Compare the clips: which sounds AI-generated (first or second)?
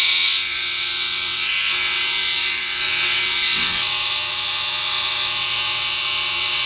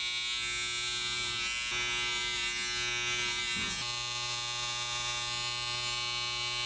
first